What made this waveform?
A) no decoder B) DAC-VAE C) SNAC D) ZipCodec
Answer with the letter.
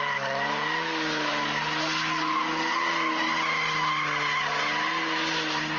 A